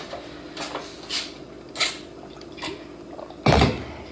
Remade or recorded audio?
recorded